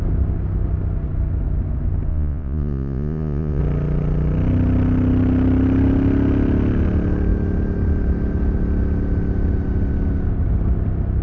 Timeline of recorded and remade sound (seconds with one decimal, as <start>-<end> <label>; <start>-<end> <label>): 0.0-2.1 recorded; 2.1-3.6 remade; 3.6-11.2 recorded